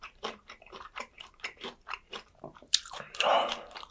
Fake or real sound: fake